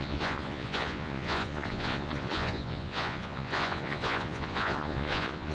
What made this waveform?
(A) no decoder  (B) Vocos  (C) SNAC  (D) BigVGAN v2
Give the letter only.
B